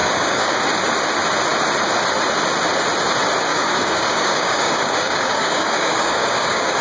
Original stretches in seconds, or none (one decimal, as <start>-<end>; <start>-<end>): 0.6-3.5